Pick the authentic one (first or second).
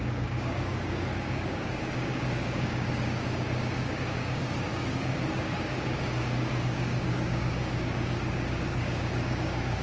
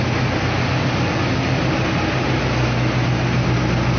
second